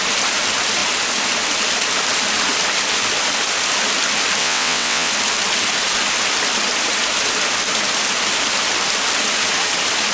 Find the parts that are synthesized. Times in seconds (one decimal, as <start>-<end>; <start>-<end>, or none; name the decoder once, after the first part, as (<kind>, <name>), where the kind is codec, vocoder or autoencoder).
4.4-5.1 (vocoder, WaveNeXt)